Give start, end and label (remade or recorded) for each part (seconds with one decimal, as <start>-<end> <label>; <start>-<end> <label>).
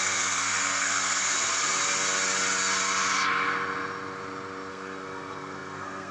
0.0-1.3 remade; 1.3-4.7 recorded; 4.7-6.1 remade